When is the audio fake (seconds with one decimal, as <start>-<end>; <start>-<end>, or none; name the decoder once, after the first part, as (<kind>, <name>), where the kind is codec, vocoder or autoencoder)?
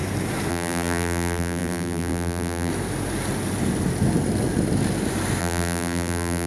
0.5-2.7 (vocoder, BigVGAN v2); 5.4-6.5